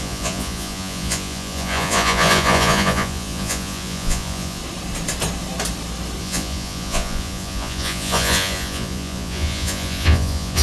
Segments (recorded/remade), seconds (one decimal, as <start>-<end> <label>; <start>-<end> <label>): 0.0-4.6 remade; 4.6-6.2 recorded; 6.2-10.6 remade